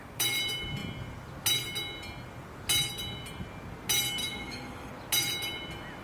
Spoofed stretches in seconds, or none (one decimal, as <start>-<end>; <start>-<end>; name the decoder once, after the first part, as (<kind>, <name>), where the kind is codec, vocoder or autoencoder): 4.2-4.9 (autoencoder, DAC-VAE)